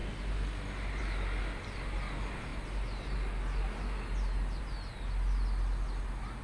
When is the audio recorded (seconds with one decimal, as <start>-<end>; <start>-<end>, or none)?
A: 0.0-6.4